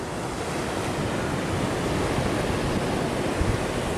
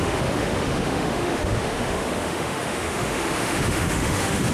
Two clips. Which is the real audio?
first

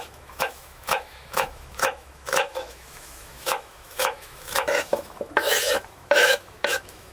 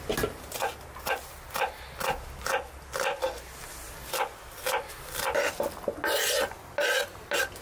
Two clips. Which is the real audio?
second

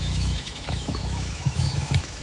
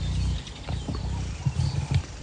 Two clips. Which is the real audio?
second